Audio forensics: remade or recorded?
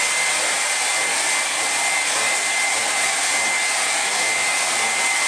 recorded